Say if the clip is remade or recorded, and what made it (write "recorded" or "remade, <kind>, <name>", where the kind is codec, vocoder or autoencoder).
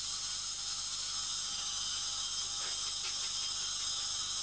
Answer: recorded